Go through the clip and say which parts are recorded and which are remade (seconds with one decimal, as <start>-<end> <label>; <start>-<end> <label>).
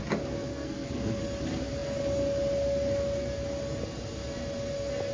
0.0-0.5 recorded; 0.5-1.2 remade; 1.2-5.1 recorded